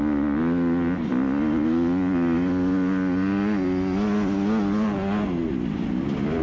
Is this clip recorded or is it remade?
recorded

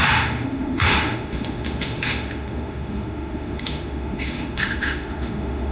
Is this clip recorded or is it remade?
remade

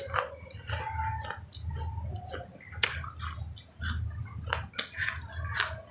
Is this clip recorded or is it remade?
recorded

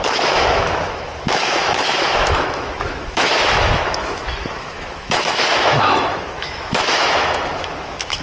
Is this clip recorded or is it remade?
remade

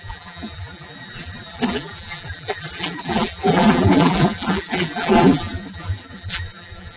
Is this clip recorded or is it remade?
remade